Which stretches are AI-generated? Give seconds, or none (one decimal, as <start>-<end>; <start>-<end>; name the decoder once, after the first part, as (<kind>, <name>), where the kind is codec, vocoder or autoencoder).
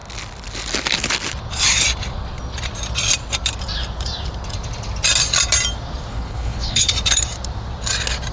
6.1-6.9 (codec, HILCodec)